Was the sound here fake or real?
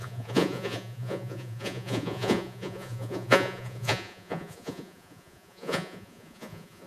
fake